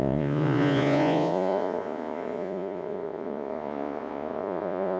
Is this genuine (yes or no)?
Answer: no